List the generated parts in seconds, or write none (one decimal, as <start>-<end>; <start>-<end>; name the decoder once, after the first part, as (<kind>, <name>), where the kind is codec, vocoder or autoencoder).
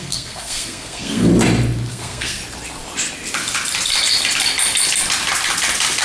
0.0-1.3 (codec, SNAC); 1.9-2.4